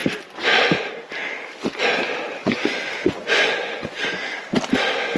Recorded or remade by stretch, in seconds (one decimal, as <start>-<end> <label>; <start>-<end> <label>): 0.0-2.4 recorded; 2.4-4.5 remade; 4.5-5.2 recorded